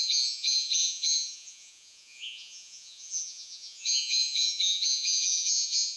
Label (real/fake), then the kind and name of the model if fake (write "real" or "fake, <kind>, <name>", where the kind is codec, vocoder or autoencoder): fake, vocoder, Vocos